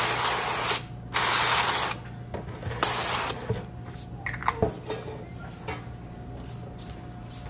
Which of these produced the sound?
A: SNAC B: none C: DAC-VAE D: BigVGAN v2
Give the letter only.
B